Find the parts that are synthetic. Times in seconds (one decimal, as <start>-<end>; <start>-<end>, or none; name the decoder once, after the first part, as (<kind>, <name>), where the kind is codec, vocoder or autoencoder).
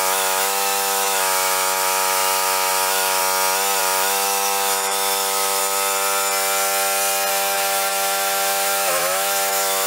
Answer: 0.0-3.2 (autoencoder, DAC-VAE); 3.8-5.6; 7.3-9.9